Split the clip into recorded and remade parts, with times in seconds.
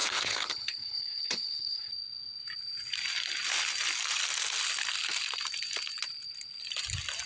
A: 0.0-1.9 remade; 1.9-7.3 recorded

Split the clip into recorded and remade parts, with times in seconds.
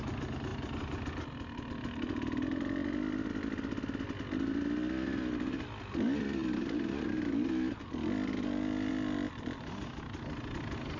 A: 0.0-11.0 recorded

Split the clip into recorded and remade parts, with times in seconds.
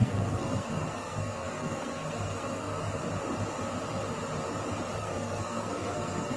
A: 0.0-2.8 remade; 2.8-5.0 recorded; 5.0-6.4 remade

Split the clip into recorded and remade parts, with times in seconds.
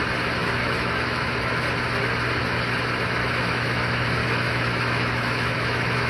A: 0.0-0.4 recorded; 0.4-1.5 remade; 1.5-3.2 recorded; 3.2-3.8 remade; 3.8-4.2 recorded; 4.2-6.1 remade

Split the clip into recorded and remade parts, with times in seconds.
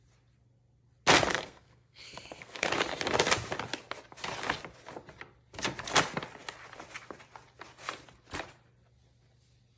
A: 0.0-1.3 recorded; 1.3-2.7 remade; 2.7-9.8 recorded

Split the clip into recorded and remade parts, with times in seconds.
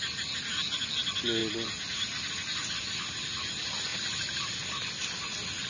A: 0.0-5.7 recorded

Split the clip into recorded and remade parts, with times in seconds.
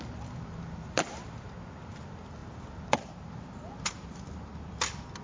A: 0.0-5.2 recorded